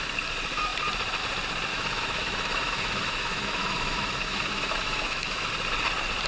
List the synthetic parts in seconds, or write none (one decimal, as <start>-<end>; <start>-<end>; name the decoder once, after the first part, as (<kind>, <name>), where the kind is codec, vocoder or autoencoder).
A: 1.7-5.5 (autoencoder, DAC-VAE)

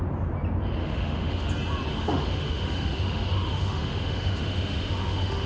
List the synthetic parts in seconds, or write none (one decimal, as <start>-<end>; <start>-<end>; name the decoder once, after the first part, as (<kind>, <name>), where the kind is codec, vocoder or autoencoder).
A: 0.8-1.5 (autoencoder, DAC-VAE); 1.9-5.5